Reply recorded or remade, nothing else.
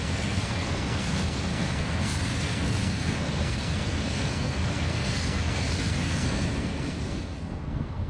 remade